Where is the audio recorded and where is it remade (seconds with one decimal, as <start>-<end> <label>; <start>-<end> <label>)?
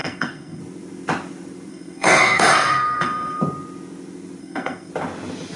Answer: 0.0-0.6 remade; 0.6-1.7 recorded; 1.7-3.4 remade; 3.4-4.4 recorded; 4.4-4.9 remade; 4.9-5.6 recorded